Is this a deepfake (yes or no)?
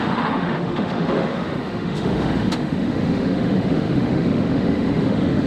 yes